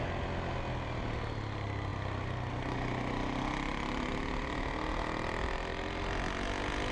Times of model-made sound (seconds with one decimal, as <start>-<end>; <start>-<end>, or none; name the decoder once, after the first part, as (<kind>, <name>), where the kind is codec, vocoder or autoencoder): none